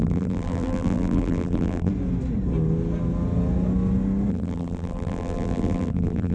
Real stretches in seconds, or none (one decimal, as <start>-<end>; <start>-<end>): 1.9-4.3